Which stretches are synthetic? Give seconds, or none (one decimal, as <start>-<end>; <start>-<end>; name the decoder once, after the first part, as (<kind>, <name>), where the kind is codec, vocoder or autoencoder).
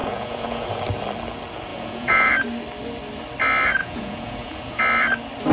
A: 0.0-0.8 (vocoder, Vocos); 1.7-2.3; 3.8-4.8